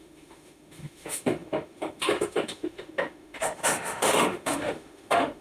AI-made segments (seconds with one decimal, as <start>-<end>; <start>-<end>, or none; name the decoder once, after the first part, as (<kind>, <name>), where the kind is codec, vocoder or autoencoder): 0.0-5.4 (autoencoder, DAC-VAE)

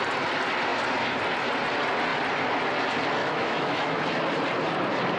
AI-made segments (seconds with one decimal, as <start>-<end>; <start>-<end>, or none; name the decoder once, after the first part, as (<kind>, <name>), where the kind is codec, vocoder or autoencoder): 3.2-4.0 (autoencoder, DAC-VAE)

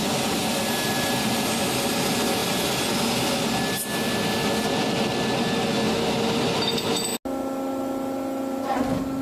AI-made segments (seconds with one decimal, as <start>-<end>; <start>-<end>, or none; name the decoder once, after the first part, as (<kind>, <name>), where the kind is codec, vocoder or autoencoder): none

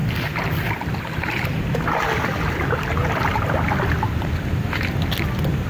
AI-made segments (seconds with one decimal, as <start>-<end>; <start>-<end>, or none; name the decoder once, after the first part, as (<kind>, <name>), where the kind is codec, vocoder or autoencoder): none

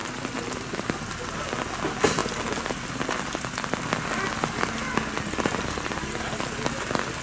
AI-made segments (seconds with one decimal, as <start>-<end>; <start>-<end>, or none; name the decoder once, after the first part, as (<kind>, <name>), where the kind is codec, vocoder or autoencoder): none